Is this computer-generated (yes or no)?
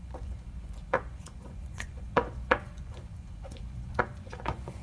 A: yes